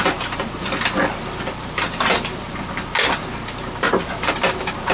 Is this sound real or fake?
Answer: real